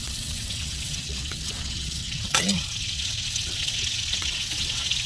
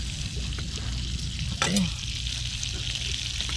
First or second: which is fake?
first